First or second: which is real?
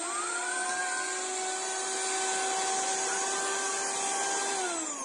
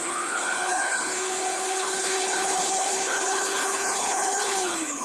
first